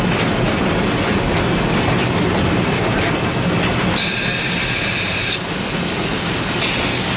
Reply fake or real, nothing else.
real